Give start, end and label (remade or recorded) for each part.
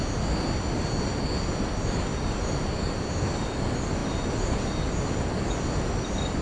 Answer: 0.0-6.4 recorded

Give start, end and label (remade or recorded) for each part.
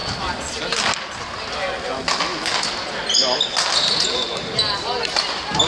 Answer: 0.0-5.7 recorded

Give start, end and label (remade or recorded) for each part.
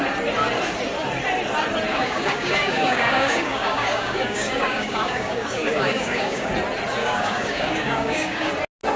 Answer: 0.0-1.9 recorded; 1.9-6.5 remade; 6.5-7.0 recorded; 7.0-8.5 remade; 8.5-9.0 recorded